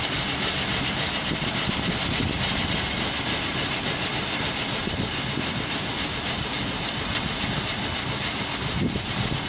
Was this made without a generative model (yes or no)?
yes